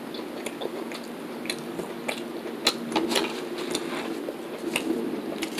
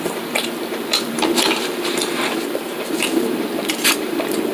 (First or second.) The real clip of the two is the first